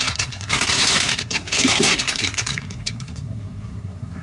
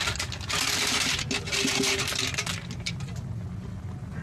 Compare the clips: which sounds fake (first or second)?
first